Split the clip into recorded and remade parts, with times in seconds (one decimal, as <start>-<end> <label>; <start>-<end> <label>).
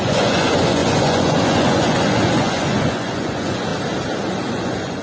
0.0-3.7 remade; 3.7-4.5 recorded; 4.5-5.0 remade